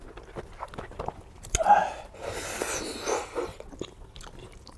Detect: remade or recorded recorded